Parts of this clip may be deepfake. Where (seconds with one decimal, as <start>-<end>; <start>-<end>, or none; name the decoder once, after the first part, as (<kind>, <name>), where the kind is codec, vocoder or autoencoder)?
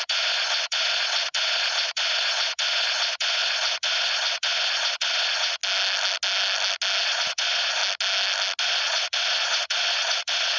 0.0-5.6 (vocoder, Vocos); 7.0-7.8; 8.6-10.6